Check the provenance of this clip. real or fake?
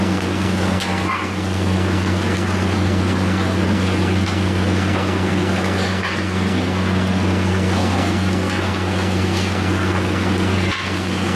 fake